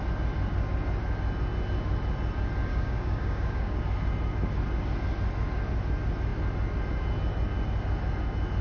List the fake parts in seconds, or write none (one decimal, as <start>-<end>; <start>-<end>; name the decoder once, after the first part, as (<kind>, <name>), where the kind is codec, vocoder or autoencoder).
2.7-3.8 (codec, DAC)

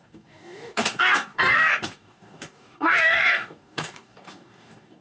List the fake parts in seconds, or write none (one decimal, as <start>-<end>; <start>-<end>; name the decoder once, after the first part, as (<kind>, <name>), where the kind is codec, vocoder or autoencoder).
0.0-5.0 (codec, DAC)

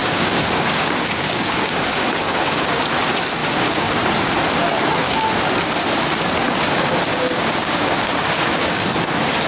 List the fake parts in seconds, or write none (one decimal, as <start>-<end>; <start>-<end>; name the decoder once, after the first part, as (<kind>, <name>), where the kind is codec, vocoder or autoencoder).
0.0-2.8 (codec, DAC); 3.4-3.9; 7.1-8.7

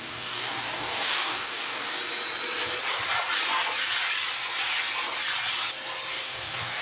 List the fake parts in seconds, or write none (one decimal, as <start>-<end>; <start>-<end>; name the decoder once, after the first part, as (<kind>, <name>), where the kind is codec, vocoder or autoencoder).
0.0-2.0 (codec, DAC); 6.1-6.8

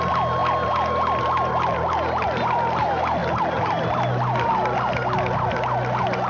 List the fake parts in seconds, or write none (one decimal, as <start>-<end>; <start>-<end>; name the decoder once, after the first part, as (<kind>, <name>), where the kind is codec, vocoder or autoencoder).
none

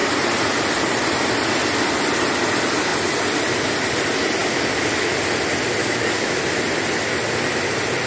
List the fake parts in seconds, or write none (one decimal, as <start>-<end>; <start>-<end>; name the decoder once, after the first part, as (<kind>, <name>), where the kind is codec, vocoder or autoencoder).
4.4-5.1 (codec, DAC); 5.8-6.4

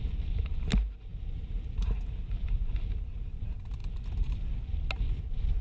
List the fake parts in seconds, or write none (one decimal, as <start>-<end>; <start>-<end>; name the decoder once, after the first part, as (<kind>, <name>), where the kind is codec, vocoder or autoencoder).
none

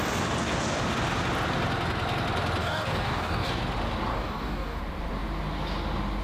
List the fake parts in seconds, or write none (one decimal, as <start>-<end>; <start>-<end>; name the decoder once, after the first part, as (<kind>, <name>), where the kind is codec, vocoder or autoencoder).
2.6-3.5 (codec, DAC); 4.1-4.8